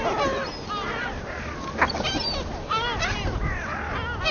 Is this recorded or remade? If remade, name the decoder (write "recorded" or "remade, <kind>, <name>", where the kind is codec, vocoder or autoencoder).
recorded